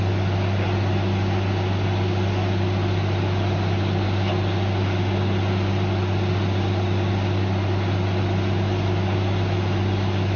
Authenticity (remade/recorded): recorded